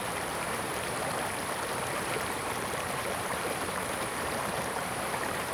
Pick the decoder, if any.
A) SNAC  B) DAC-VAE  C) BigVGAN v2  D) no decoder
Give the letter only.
C